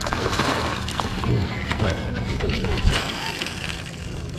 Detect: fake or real fake